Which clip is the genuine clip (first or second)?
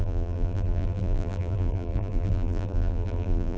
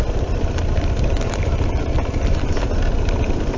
second